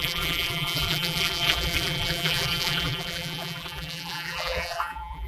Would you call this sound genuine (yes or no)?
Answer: no